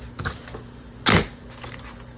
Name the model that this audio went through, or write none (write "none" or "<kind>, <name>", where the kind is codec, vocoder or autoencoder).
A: none